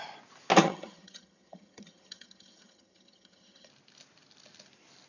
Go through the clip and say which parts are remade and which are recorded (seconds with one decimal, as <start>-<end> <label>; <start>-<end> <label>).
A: 0.0-0.6 recorded; 0.6-3.7 remade; 3.7-5.1 recorded